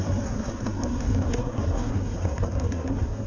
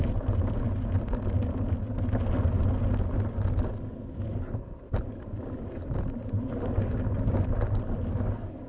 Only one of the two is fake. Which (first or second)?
first